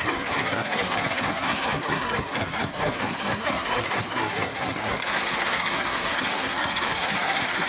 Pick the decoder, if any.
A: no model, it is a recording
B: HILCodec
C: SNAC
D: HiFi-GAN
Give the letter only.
C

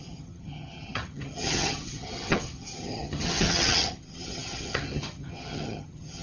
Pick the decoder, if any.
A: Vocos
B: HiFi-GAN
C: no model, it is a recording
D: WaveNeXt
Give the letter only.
B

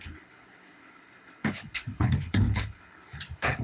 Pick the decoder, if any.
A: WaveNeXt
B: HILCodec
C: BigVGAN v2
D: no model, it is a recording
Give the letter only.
B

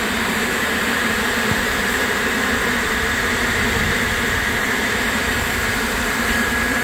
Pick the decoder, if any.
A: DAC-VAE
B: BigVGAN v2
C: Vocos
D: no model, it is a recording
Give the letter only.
B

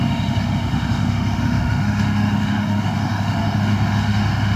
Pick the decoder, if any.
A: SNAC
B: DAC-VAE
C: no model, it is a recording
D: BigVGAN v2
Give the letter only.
B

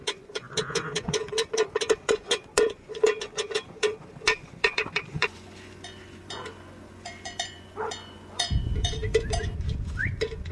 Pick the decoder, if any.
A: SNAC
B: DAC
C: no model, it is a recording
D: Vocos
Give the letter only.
D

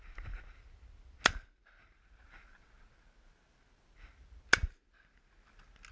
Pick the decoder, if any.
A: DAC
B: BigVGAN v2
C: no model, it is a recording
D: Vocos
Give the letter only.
C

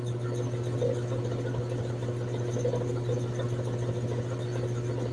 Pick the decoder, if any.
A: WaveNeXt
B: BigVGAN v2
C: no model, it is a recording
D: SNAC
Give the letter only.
C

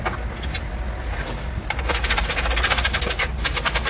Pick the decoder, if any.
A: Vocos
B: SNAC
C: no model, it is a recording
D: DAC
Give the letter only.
C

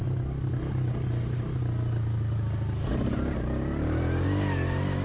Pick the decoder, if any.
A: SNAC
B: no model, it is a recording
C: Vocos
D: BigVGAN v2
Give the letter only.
B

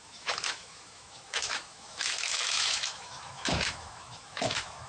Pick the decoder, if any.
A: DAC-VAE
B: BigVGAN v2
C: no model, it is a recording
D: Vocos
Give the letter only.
A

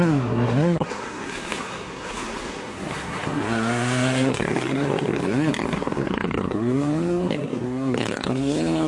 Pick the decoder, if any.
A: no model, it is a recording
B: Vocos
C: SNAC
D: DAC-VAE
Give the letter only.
C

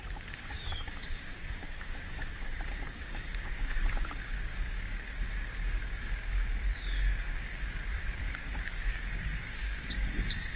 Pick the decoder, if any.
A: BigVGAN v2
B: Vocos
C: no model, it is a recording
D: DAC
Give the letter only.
D